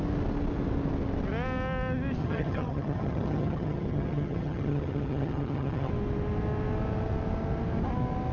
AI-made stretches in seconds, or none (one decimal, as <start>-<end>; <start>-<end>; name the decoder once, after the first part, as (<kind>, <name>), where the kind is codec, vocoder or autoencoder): 2.2-5.9 (vocoder, HiFi-GAN)